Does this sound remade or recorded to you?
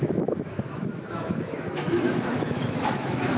remade